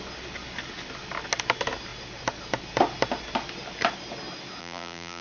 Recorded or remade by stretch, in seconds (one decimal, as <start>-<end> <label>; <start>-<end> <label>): 0.0-4.6 recorded; 4.6-5.2 remade